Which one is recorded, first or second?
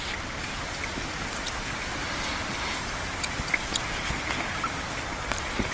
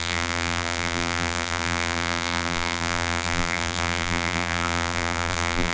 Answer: first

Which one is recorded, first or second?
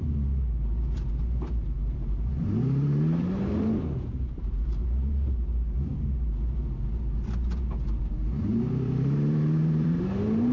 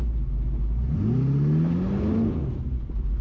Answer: second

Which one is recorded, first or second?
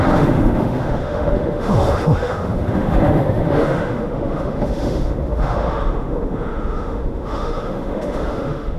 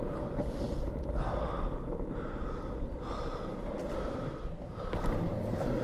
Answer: second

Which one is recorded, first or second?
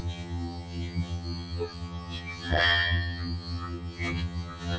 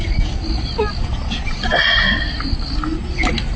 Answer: second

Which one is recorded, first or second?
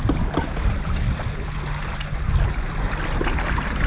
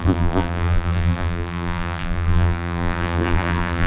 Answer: first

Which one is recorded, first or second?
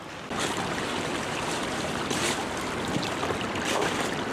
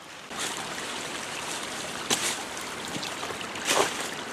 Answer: first